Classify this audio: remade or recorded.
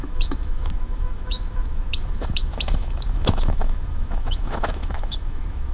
remade